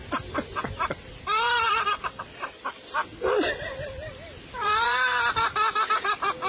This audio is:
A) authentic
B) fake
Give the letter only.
B